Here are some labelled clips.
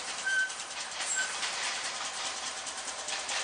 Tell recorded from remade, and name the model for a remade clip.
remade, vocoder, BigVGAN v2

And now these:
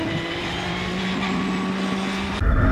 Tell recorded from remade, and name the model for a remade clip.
recorded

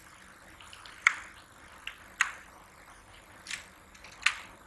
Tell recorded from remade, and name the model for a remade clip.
recorded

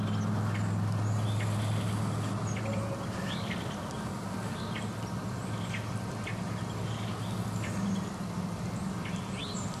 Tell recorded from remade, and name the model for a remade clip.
recorded